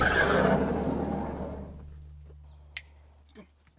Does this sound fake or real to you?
real